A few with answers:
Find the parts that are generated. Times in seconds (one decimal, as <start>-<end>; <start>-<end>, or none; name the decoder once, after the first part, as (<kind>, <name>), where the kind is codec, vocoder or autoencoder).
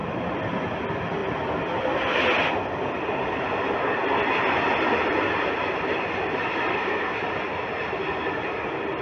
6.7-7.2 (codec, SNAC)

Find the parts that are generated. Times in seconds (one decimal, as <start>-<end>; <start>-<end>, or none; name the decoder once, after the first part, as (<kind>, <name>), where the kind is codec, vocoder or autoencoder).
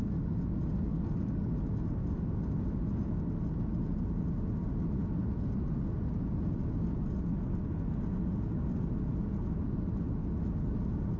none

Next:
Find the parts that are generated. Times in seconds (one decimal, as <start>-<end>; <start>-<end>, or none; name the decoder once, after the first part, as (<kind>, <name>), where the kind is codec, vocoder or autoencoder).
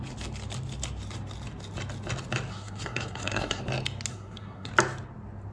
2.5-3.6 (codec, SNAC); 4.1-4.7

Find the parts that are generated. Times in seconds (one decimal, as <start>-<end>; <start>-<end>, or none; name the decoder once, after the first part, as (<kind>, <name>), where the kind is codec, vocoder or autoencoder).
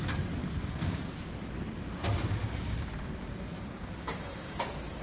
0.4-1.1 (codec, SNAC)